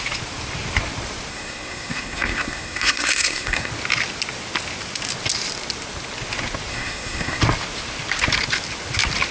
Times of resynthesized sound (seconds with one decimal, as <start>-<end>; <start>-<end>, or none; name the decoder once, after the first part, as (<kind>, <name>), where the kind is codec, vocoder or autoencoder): 1.3-3.7 (codec, SNAC); 6.7-7.4